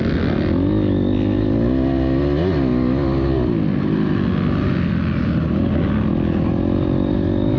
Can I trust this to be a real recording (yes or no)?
yes